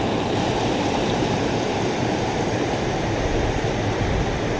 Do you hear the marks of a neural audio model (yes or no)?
no